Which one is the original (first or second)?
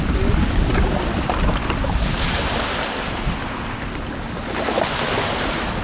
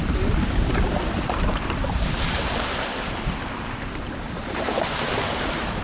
first